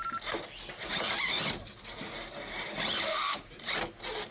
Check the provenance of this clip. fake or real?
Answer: real